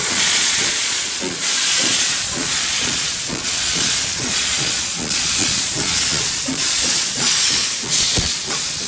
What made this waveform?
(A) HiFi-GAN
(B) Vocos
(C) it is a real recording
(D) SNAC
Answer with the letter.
B